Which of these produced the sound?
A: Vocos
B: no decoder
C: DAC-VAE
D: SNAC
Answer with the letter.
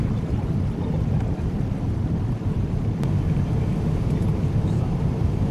B